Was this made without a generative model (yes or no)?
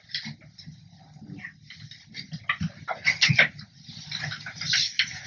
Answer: yes